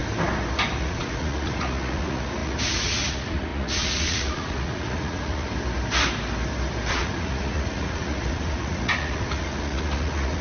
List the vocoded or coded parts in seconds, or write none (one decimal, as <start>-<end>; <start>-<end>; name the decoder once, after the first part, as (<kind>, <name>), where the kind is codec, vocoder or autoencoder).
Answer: 0.8-5.5 (vocoder, Vocos); 6.9-10.4